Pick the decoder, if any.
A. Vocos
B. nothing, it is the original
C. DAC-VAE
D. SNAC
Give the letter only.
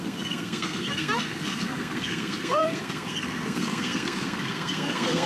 D